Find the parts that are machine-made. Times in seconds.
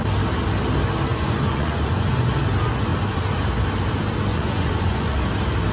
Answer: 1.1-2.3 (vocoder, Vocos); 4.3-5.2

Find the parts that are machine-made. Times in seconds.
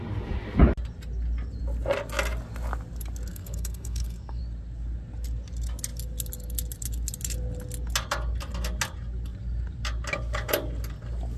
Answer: 3.3-4.4 (codec, SNAC)